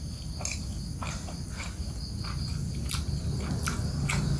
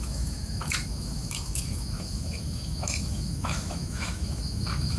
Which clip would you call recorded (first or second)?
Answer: first